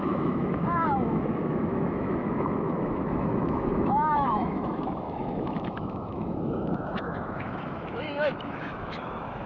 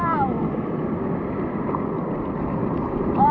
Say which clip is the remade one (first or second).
first